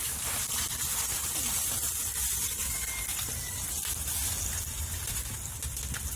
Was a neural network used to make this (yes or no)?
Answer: no